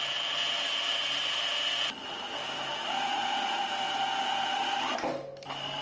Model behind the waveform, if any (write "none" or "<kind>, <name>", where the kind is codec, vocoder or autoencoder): none